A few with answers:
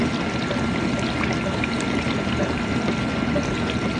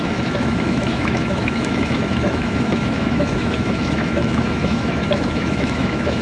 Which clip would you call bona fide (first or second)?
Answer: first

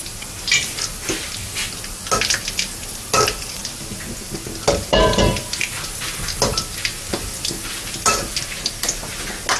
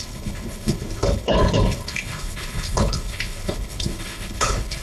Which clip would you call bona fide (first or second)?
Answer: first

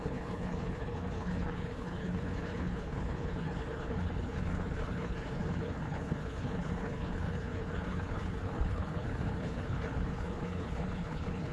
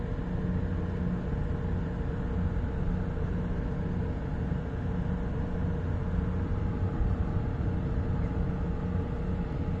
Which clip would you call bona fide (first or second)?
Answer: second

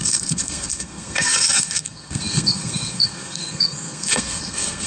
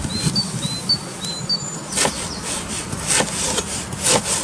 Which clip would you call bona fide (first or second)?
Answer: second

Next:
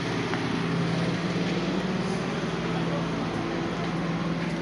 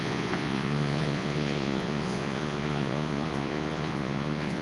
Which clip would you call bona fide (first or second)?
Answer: first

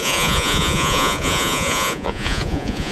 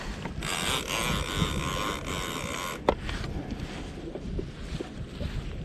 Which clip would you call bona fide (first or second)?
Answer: second